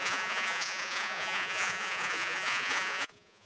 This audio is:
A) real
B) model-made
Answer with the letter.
B